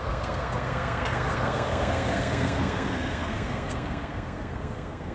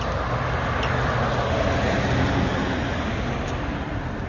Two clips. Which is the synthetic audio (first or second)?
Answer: first